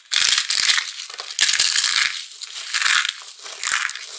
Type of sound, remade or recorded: recorded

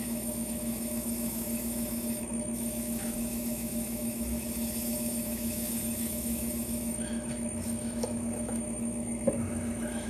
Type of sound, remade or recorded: remade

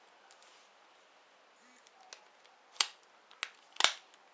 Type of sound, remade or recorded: recorded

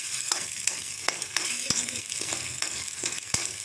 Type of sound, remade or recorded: remade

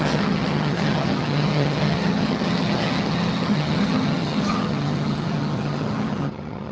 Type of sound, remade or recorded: remade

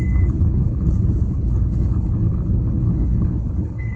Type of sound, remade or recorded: remade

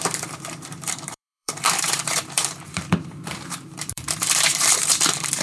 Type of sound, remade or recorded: remade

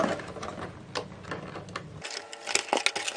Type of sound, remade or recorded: recorded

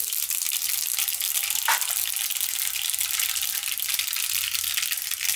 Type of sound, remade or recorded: recorded